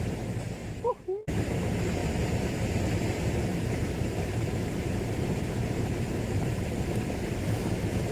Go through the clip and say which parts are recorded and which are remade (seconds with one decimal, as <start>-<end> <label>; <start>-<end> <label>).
0.0-0.6 recorded; 0.6-1.6 remade; 1.6-2.0 recorded; 2.0-2.6 remade; 2.6-3.5 recorded; 3.5-7.2 remade; 7.2-8.1 recorded